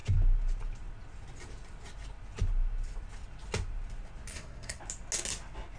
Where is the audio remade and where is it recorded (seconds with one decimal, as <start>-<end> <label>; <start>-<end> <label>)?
0.0-4.3 recorded; 4.3-4.8 remade; 4.8-5.8 recorded